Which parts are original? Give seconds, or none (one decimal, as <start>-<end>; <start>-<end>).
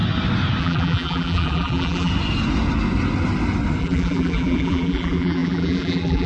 0.0-0.6; 2.1-3.8